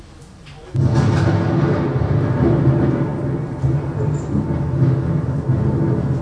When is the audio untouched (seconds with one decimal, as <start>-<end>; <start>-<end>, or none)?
0.0-6.2